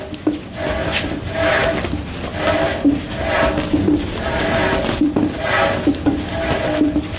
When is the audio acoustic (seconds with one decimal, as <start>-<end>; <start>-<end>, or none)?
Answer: 0.0-7.2